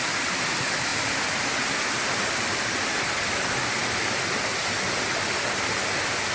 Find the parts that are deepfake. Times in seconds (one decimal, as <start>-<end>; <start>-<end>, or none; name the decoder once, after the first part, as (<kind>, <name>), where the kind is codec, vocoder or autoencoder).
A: none